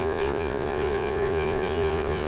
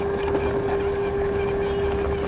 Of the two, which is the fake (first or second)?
first